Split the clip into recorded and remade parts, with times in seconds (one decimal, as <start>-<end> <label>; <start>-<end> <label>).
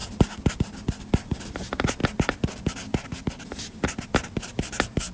0.0-5.1 recorded